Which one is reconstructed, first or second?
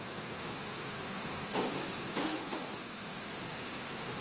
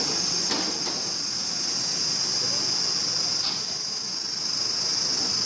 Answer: first